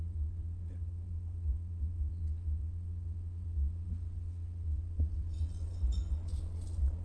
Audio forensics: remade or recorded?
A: remade